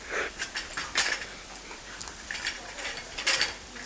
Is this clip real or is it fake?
real